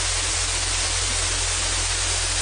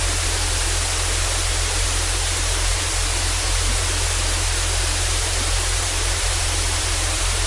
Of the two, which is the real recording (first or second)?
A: first